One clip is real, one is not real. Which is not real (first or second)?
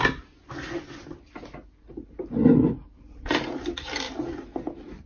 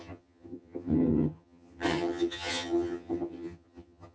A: second